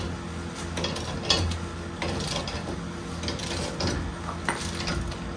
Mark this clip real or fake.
real